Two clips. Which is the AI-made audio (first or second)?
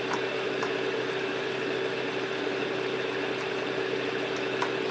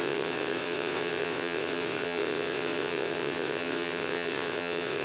second